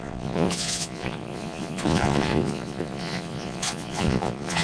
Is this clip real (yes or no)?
no